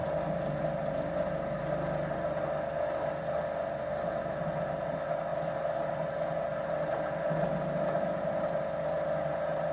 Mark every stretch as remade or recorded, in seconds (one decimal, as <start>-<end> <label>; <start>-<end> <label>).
0.0-9.7 recorded